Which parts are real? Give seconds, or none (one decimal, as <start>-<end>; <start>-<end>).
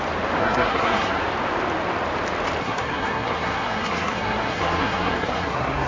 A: 0.0-0.4; 1.2-2.6